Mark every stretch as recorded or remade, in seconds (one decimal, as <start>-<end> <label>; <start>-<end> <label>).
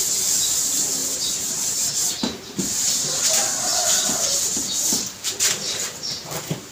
0.0-1.0 recorded; 1.0-3.2 remade; 3.2-5.6 recorded; 5.6-6.7 remade